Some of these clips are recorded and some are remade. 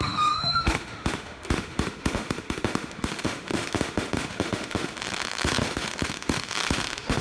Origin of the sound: remade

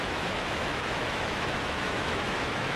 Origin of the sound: remade